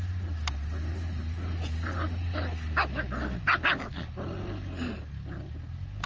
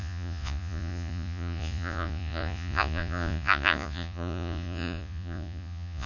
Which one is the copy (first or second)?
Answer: second